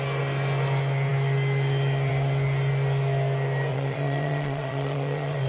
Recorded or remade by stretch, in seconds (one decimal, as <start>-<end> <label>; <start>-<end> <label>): 0.0-3.7 recorded; 3.7-5.5 remade